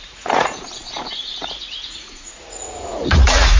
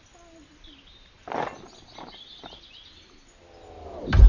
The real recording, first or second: second